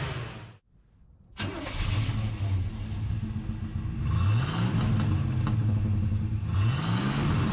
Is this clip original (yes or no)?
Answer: yes